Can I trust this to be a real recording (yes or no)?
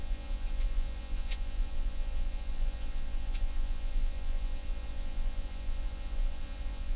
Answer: no